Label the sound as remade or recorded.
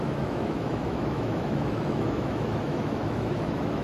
remade